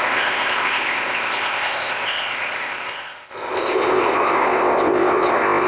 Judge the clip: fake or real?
fake